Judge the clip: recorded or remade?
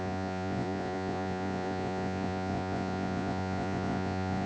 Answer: remade